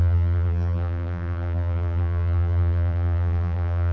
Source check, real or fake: fake